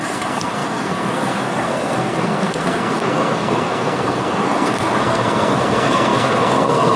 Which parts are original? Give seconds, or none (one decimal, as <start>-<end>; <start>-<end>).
none